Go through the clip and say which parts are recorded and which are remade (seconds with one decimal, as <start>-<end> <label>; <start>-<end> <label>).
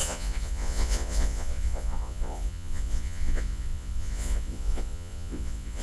0.0-5.8 remade